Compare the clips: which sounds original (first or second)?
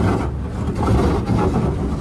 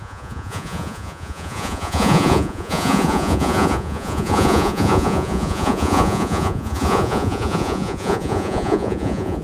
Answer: first